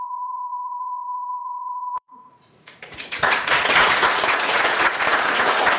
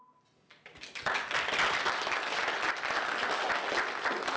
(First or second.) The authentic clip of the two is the second